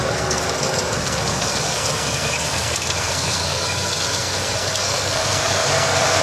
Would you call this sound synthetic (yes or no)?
yes